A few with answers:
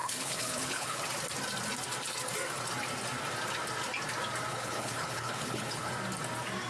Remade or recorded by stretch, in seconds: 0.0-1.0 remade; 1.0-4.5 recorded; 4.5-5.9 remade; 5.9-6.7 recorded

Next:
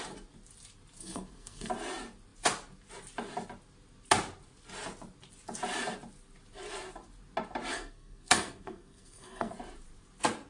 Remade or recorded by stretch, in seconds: 0.0-1.0 recorded; 1.0-1.7 remade; 1.7-7.7 recorded; 7.7-9.5 remade; 9.5-10.5 recorded

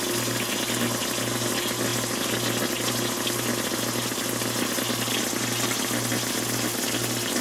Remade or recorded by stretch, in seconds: 0.0-7.4 recorded

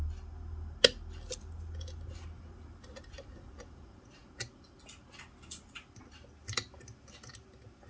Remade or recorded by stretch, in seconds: 0.0-7.9 recorded

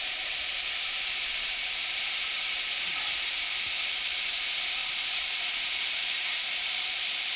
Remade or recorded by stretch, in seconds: 0.0-3.0 remade; 3.0-4.8 recorded; 4.8-5.7 remade; 5.7-6.6 recorded; 6.6-7.4 remade

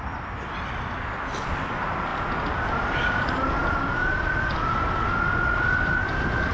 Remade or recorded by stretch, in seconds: 0.0-6.5 recorded

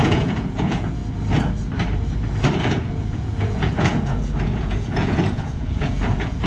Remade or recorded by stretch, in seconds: 0.0-1.0 remade; 1.0-2.6 recorded; 2.6-6.5 remade

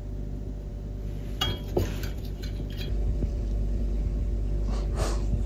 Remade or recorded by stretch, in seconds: 0.0-0.7 recorded; 0.7-4.0 remade; 4.0-5.5 recorded